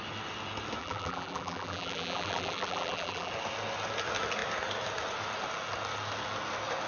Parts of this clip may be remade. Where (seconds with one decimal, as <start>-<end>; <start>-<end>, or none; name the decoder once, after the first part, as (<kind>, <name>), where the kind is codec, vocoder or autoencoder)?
0.8-3.3 (vocoder, BigVGAN v2)